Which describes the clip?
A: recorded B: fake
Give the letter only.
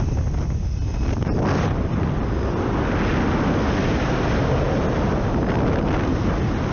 A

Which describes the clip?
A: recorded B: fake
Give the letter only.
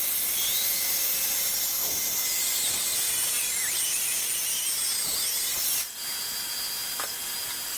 A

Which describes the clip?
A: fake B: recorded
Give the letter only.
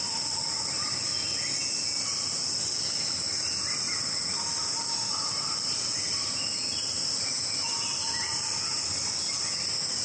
B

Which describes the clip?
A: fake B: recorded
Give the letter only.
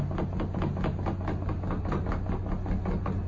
B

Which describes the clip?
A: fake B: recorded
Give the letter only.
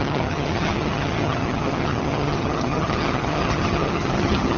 A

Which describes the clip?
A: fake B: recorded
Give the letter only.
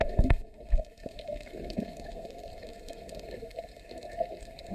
A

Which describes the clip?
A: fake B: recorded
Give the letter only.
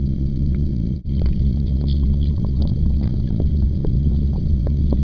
A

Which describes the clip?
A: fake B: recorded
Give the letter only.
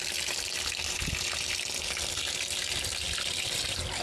B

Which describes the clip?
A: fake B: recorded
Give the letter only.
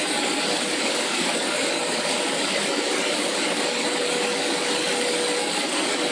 A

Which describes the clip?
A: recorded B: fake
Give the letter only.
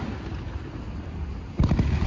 A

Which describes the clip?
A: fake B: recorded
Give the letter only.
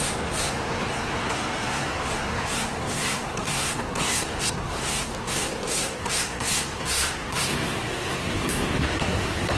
A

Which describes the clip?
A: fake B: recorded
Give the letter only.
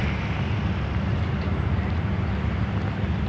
B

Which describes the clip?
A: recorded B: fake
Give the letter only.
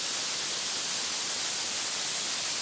A